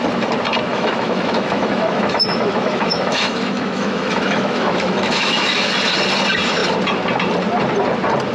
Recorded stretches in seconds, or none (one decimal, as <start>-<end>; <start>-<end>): 0.0-0.7; 5.7-8.3